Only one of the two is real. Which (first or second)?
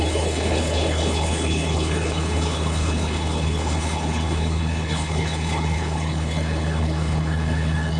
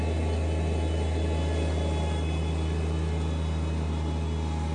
second